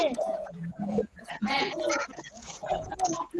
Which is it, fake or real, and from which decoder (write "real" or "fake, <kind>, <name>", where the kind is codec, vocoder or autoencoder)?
fake, vocoder, Vocos